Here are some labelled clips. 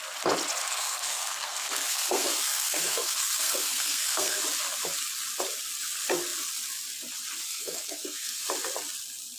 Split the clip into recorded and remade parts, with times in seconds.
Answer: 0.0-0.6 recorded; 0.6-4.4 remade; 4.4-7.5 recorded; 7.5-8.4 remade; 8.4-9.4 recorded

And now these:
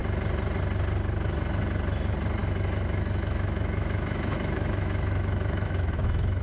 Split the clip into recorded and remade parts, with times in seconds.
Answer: 0.0-2.4 recorded; 2.4-6.4 remade

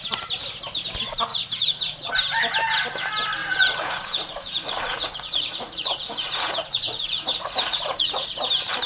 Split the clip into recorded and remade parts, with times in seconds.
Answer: 0.0-1.3 recorded; 1.3-2.1 remade; 2.1-3.4 recorded; 3.4-8.4 remade; 8.4-8.9 recorded

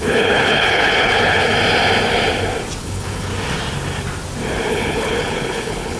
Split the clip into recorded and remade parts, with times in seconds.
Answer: 0.0-1.4 remade; 1.4-2.8 recorded; 2.8-3.3 remade; 3.3-4.7 recorded; 4.7-6.0 remade